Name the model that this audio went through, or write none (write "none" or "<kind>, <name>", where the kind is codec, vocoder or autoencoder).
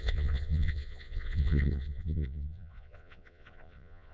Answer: vocoder, Vocos